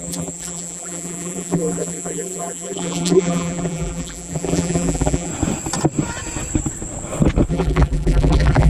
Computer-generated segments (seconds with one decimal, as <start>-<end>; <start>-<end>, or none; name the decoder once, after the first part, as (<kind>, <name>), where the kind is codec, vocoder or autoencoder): 0.0-5.3 (vocoder, BigVGAN v2); 7.5-8.7